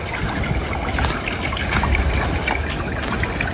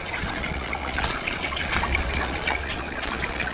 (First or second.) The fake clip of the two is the second